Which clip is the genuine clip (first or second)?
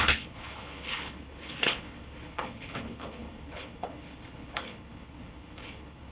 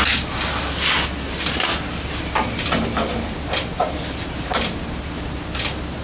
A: second